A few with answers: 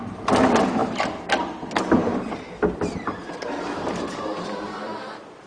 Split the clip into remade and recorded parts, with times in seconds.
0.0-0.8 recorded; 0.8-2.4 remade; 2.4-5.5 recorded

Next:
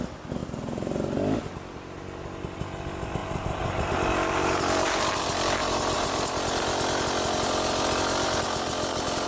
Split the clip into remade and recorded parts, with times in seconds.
0.0-3.2 recorded; 3.2-3.9 remade; 3.9-5.6 recorded; 5.6-6.2 remade; 6.2-9.3 recorded

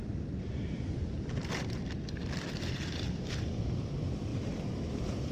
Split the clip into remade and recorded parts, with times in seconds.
0.0-1.8 remade; 1.8-3.2 recorded; 3.2-5.3 remade

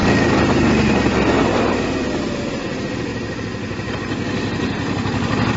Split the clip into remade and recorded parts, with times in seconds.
0.0-3.1 recorded; 3.1-4.0 remade; 4.0-5.6 recorded

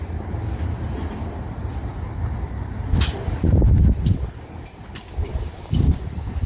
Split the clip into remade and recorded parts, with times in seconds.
0.0-6.5 remade